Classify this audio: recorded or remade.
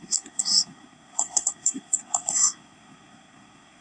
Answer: remade